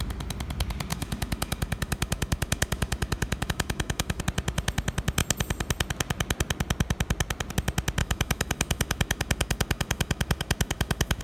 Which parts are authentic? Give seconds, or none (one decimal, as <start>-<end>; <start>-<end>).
0.0-0.9; 4.2-8.0